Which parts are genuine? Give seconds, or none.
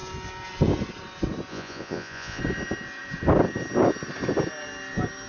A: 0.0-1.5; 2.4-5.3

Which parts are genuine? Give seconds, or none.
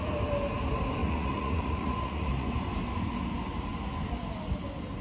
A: 0.0-1.0; 2.5-5.0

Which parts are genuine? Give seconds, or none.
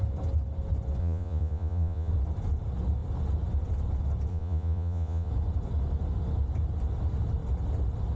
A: 0.0-1.0; 2.1-4.3; 5.3-8.2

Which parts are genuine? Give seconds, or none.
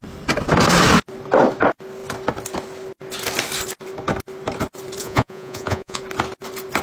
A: 0.0-5.0; 6.0-6.8